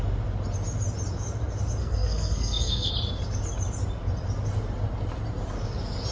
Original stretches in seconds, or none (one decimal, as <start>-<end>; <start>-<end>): 0.0-1.8; 2.9-6.1